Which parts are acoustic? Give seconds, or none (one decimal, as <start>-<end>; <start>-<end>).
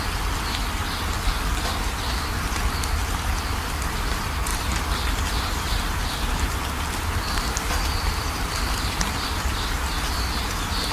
0.0-3.0; 3.6-4.5; 9.7-10.9